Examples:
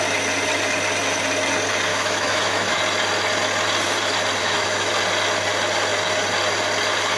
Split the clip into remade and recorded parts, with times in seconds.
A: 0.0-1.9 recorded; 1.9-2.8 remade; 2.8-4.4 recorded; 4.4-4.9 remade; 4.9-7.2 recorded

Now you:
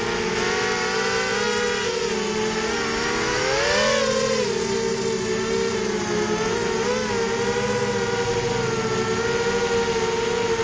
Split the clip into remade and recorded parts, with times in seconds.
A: 0.0-10.6 recorded